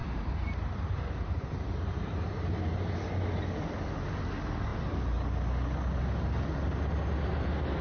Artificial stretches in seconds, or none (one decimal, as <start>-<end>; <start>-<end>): 0.0-2.7

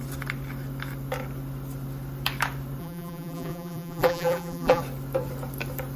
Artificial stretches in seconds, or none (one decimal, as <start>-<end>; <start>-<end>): 2.8-4.8

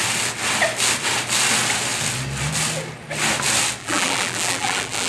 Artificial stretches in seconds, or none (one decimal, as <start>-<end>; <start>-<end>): 3.8-5.1

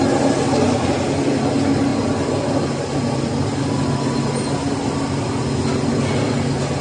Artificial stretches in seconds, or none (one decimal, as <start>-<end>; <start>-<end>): none

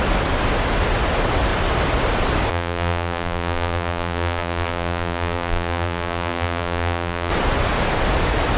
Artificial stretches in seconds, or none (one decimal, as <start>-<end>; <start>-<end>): 2.5-7.3

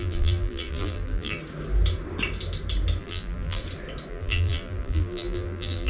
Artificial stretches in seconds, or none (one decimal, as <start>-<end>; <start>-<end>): 0.0-1.4; 3.0-3.6; 4.1-5.9

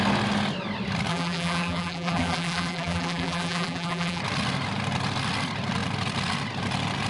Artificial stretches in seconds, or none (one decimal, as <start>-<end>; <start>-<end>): 1.1-4.2